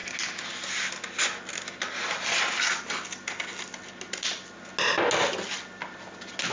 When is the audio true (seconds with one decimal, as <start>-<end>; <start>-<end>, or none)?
0.0-6.5